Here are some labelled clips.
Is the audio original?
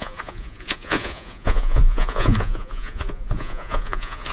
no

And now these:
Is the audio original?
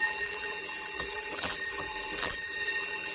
no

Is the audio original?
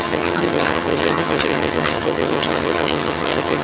no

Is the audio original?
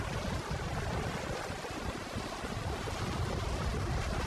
yes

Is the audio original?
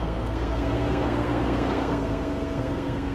no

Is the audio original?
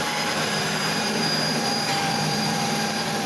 no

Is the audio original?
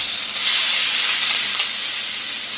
yes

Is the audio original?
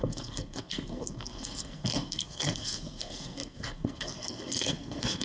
no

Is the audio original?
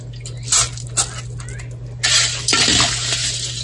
yes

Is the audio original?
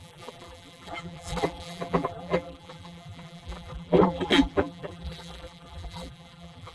no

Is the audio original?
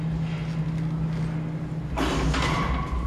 yes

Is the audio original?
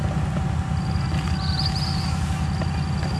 yes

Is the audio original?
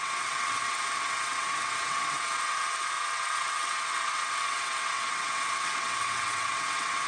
no